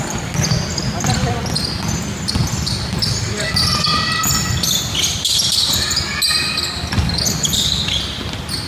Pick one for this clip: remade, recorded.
recorded